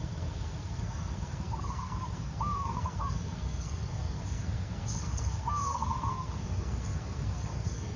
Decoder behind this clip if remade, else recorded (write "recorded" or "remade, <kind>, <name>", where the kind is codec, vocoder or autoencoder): remade, codec, SNAC